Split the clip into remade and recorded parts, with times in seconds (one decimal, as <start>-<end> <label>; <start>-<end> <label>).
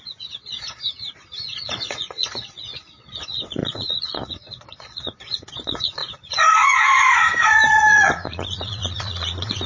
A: 0.0-9.7 remade